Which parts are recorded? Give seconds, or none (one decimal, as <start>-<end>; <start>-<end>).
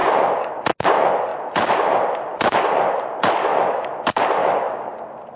0.5-1.3; 3.3-4.4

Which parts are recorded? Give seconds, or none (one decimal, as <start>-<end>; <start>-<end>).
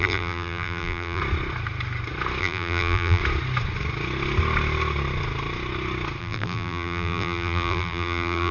1.2-2.4; 3.2-6.2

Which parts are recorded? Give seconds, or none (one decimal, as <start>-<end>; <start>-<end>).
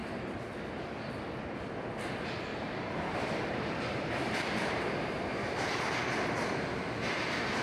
0.0-2.5; 5.8-7.6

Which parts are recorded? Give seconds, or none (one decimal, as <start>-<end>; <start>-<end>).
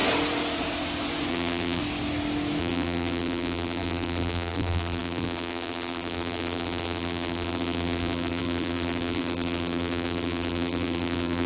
0.0-1.3; 1.8-2.6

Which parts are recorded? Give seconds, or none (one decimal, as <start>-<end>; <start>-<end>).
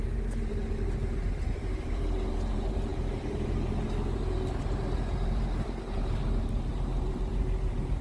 none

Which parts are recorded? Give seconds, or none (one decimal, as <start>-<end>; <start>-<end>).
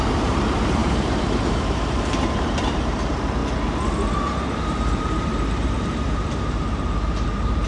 3.4-4.6